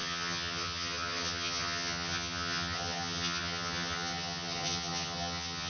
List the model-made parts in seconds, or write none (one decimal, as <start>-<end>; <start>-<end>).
0.0-5.7